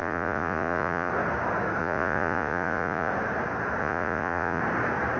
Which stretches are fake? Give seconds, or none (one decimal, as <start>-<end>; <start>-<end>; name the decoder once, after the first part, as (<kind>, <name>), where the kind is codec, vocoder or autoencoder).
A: 0.0-1.1 (vocoder, Vocos); 1.8-3.1; 3.8-4.6